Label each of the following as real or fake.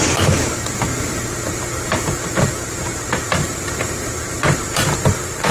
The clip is fake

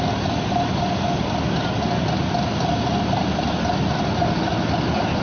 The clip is real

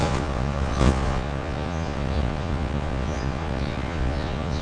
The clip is fake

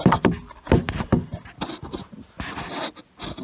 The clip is real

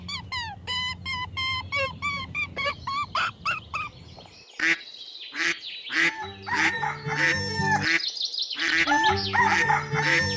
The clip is real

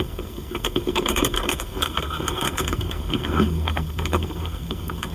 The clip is fake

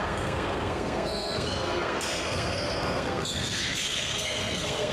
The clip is fake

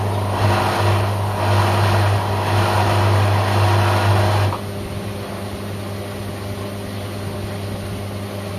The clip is real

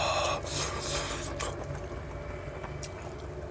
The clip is real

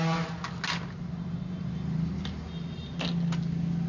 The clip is real